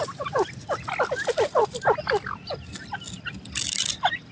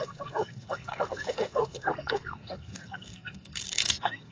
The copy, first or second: second